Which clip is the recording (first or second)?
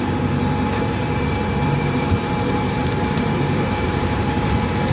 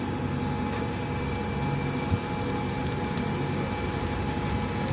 second